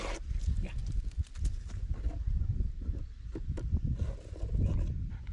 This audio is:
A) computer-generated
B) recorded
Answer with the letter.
B